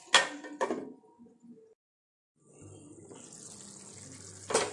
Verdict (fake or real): real